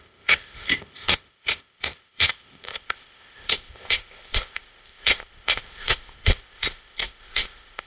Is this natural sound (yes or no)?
no